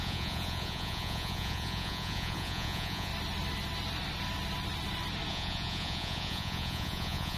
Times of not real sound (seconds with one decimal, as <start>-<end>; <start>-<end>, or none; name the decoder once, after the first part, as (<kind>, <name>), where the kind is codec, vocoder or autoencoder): 0.0-3.1 (vocoder, Vocos); 5.3-7.4